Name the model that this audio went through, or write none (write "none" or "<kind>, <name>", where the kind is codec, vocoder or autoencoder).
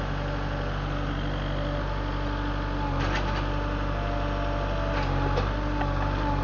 none